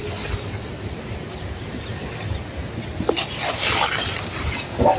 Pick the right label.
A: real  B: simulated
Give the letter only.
A